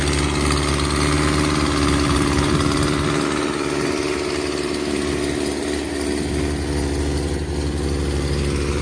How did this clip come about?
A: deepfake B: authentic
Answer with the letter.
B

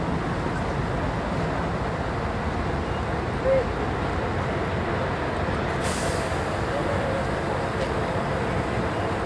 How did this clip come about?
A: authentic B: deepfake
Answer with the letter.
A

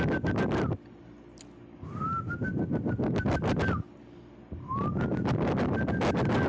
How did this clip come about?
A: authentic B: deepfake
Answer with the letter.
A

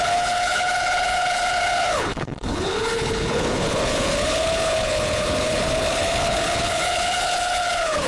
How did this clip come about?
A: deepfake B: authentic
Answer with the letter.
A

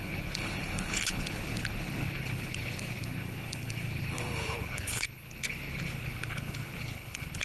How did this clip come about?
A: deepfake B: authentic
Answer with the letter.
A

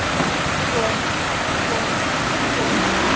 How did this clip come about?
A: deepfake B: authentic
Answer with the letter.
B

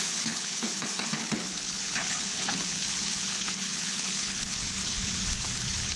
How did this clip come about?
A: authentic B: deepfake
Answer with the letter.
B